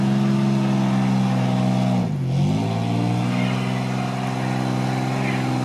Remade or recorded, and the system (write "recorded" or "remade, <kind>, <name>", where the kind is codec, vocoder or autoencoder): recorded